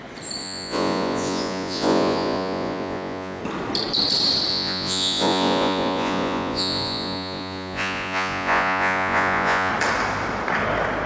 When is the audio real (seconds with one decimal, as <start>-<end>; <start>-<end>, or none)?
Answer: 0.0-0.4; 3.4-4.5; 9.7-11.1